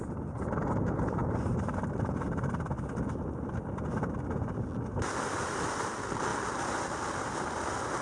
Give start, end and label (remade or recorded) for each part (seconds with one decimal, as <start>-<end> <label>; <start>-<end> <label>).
0.0-8.0 recorded